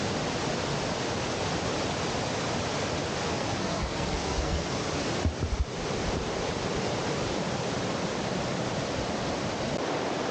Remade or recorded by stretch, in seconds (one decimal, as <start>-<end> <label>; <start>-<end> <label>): 0.0-3.2 recorded; 3.2-4.8 remade; 4.8-10.3 recorded